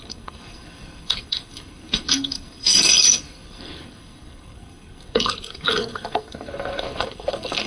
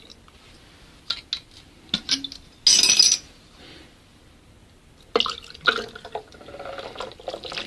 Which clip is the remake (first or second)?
first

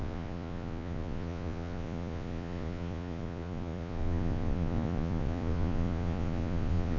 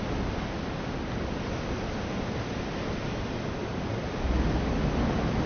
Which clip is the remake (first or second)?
first